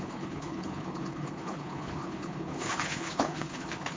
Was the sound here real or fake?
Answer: fake